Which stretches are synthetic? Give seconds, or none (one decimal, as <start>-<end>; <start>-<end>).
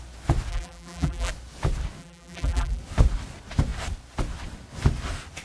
0.5-1.3; 2.0-2.8